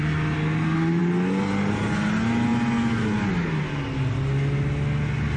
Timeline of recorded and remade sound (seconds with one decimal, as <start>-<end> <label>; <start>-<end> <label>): 0.0-5.4 recorded